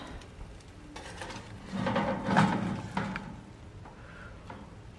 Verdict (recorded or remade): recorded